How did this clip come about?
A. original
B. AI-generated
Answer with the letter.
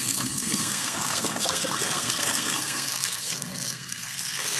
B